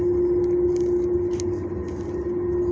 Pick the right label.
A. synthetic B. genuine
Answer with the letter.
B